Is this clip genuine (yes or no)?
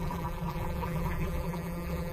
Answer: no